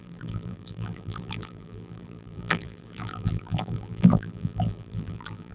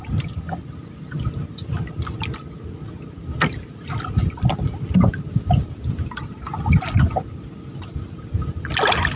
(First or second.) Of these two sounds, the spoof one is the first